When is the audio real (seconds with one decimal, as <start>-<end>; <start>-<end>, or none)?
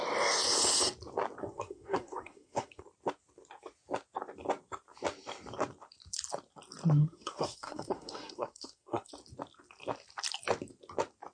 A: 0.0-1.4; 2.8-7.0; 9.1-11.3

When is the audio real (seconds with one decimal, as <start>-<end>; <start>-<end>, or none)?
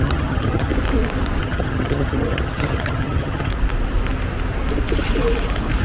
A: 0.7-1.4; 3.5-5.8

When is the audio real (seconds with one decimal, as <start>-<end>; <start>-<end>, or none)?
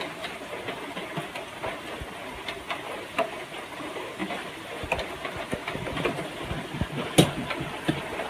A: 0.0-8.3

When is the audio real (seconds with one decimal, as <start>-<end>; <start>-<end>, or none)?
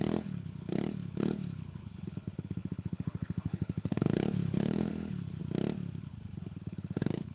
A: 5.4-6.0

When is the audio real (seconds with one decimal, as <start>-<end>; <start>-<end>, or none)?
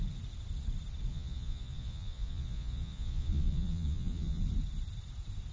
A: 0.0-1.1; 4.4-5.5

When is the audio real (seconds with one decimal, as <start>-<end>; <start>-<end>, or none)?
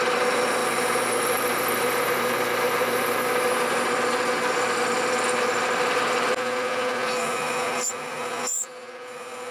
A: 0.0-0.6; 2.1-9.5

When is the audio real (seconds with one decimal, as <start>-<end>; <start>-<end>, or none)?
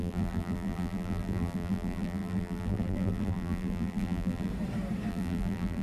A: 4.5-5.1